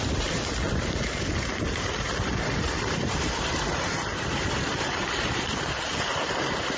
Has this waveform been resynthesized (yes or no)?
yes